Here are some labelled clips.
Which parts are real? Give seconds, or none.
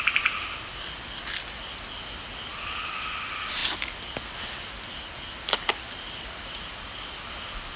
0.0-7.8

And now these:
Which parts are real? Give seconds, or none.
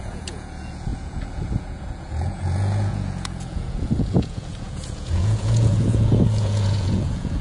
none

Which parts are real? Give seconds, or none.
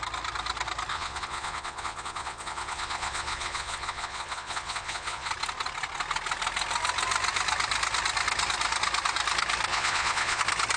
0.0-0.9; 5.3-9.7; 10.4-10.8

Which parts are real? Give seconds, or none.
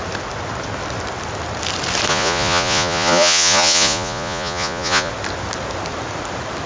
0.0-2.1; 5.1-6.7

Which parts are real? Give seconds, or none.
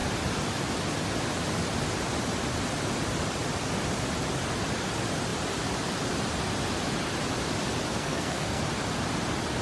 0.0-7.9; 8.6-9.6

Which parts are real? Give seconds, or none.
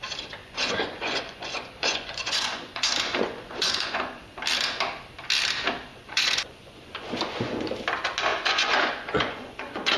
0.0-0.4; 4.2-5.9; 7.6-8.3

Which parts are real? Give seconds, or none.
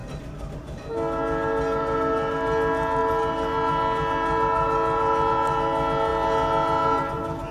0.0-7.5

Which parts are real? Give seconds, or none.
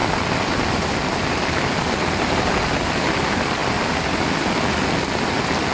0.0-5.7